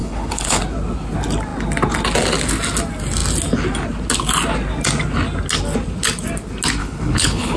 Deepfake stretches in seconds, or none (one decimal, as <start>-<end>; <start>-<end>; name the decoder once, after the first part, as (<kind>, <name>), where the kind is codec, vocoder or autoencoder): 0.0-0.6 (codec, HILCodec); 6.8-7.6